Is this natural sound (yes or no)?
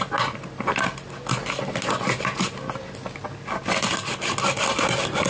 yes